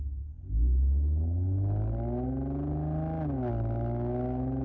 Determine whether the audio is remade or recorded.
recorded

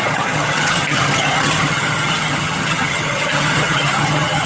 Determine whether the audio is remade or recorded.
remade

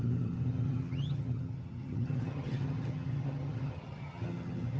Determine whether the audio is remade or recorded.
remade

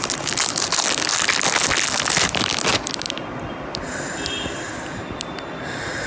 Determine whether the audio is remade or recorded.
recorded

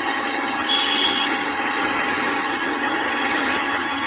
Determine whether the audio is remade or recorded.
remade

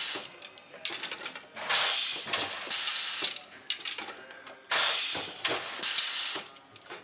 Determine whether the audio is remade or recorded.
recorded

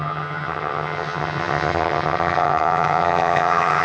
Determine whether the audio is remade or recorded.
remade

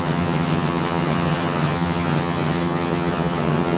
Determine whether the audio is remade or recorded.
remade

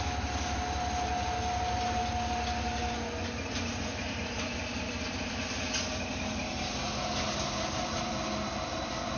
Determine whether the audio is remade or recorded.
recorded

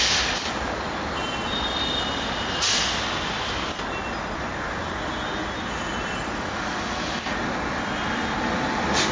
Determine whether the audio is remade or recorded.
recorded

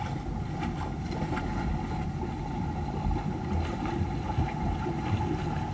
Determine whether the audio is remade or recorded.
recorded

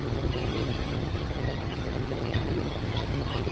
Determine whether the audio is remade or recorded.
remade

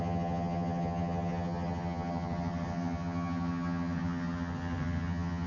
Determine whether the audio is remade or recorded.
remade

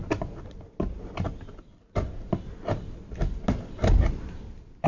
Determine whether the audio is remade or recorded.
recorded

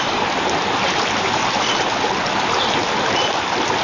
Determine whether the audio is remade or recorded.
recorded